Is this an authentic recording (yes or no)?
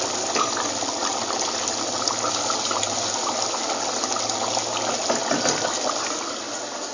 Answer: yes